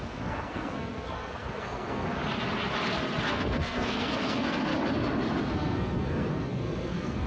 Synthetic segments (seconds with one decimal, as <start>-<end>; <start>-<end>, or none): 0.0-2.2; 3.2-4.7; 5.4-7.3